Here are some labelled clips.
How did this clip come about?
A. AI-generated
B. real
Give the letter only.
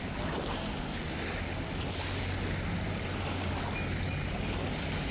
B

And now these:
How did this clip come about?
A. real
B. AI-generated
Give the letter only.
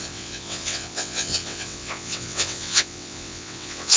B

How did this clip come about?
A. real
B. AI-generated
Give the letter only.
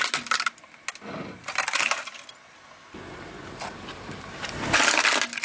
A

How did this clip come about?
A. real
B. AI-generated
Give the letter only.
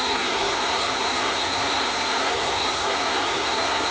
B